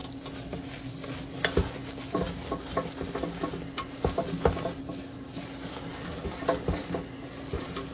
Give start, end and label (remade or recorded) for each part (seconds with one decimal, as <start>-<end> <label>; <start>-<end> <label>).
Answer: 0.0-7.9 recorded